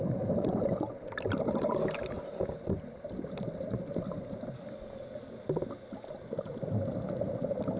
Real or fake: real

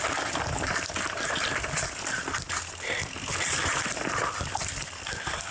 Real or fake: real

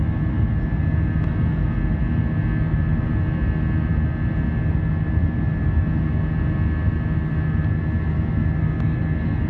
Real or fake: real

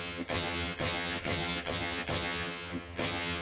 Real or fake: fake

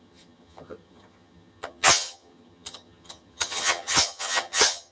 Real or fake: fake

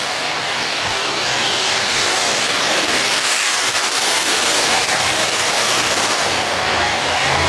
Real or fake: fake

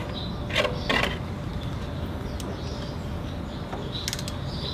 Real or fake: real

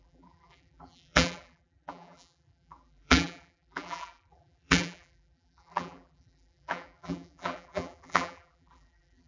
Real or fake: fake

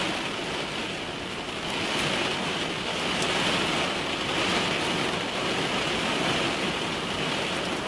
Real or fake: real